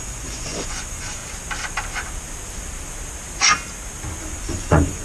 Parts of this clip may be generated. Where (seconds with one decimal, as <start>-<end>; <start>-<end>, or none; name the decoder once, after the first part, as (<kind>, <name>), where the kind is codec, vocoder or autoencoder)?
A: 0.0-1.2 (vocoder, Vocos); 4.2-5.0

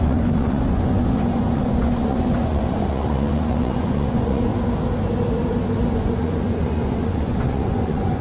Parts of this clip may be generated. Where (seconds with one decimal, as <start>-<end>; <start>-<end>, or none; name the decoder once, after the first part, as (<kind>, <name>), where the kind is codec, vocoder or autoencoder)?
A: 0.0-4.5 (vocoder, Vocos); 5.9-8.2

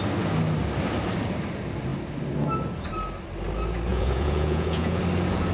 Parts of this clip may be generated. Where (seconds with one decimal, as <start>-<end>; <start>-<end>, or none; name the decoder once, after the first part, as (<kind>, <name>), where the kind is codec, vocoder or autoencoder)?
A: 3.9-5.0 (vocoder, Vocos)

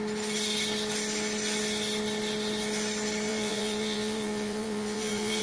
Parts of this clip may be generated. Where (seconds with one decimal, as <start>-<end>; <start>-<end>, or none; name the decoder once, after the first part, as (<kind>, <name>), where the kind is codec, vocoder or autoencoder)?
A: 3.3-5.4 (vocoder, Vocos)